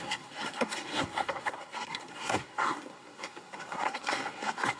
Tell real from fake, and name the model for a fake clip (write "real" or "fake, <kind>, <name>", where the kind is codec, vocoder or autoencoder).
fake, codec, SNAC